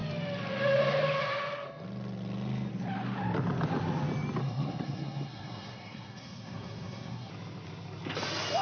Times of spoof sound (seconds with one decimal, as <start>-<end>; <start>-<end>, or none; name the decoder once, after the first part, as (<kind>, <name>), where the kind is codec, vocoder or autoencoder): 4.4-7.3 (codec, SNAC)

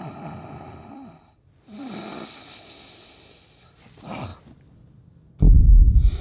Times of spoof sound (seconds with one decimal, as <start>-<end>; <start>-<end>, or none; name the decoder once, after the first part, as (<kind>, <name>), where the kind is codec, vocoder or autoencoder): 0.0-1.8 (vocoder, BigVGAN v2); 2.3-6.2

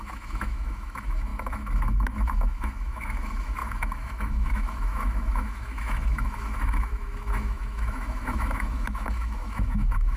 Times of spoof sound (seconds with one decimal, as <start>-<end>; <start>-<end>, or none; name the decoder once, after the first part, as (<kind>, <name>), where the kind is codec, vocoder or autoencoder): 0.0-10.2 (autoencoder, DAC-VAE)

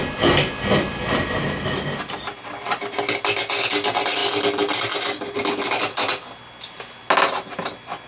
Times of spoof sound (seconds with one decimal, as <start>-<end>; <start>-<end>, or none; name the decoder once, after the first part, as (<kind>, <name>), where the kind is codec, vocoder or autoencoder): none

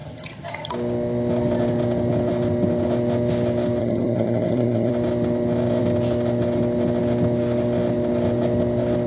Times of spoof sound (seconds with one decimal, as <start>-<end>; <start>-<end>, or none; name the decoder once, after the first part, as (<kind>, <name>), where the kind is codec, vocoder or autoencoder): 0.0-0.7 (vocoder, HiFi-GAN); 3.8-4.9

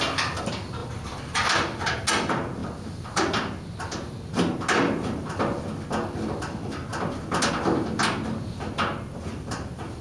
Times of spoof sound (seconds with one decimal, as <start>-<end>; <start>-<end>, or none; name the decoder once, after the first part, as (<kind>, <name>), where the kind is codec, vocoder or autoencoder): none

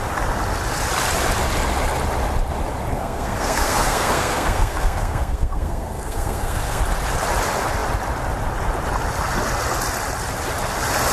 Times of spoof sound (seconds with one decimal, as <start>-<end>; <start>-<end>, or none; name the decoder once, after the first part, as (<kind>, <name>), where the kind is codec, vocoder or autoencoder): 2.9-6.8 (codec, SNAC)